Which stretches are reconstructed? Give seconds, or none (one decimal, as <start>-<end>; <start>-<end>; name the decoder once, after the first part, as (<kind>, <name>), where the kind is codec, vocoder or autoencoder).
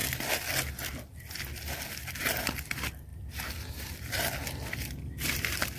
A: none